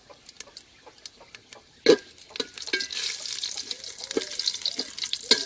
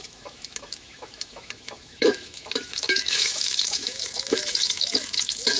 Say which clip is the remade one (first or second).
second